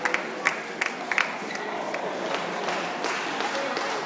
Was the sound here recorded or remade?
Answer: recorded